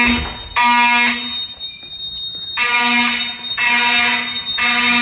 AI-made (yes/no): no